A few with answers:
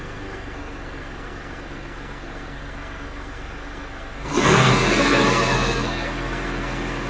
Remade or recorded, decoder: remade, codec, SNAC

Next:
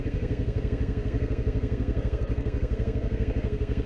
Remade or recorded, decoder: remade, codec, SNAC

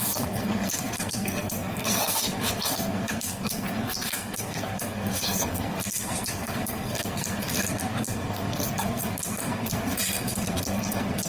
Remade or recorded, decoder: remade, codec, SNAC